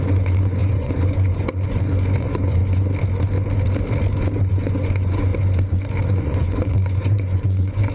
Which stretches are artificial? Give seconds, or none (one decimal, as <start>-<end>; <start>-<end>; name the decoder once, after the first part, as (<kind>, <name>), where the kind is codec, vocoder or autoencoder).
0.0-2.6 (vocoder, Vocos); 4.5-5.3; 6.1-7.9